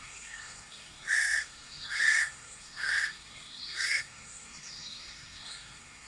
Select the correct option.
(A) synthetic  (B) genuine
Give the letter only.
A